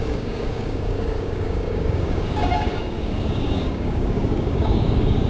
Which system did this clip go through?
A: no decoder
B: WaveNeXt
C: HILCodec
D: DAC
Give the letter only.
D